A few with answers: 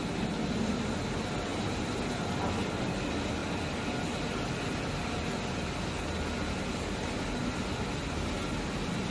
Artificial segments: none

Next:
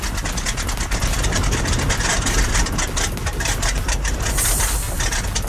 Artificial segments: 3.2-4.2

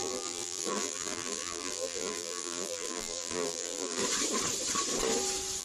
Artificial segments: 0.0-4.0

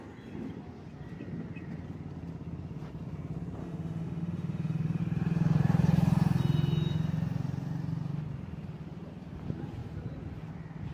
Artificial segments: 3.6-5.0

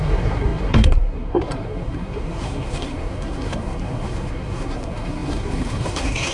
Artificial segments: 0.0-6.3

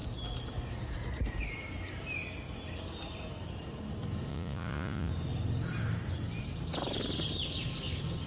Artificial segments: 4.3-5.1

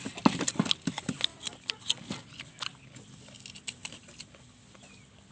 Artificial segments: none

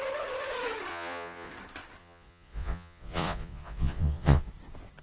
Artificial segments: 0.9-1.5; 2.0-4.5